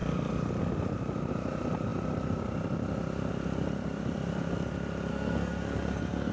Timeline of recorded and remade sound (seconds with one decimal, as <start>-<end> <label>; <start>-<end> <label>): 0.0-5.1 recorded; 5.1-6.3 remade